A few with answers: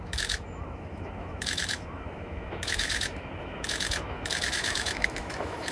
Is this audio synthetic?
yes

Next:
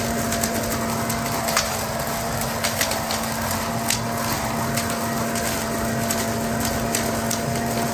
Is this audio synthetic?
no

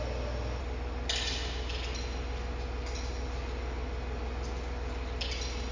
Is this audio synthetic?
no